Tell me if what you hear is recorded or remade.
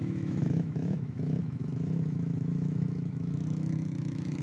remade